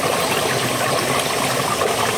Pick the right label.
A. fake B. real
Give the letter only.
B